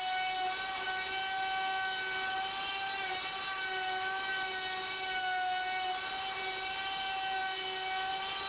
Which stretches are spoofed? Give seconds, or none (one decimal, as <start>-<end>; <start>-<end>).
none